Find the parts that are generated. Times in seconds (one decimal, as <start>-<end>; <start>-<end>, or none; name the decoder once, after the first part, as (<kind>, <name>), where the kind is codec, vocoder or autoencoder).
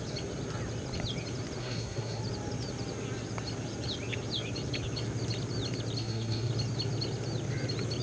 1.6-2.2 (codec, SNAC); 6.0-6.5